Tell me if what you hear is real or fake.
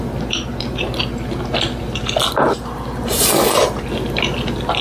real